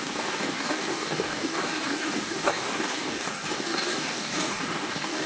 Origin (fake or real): fake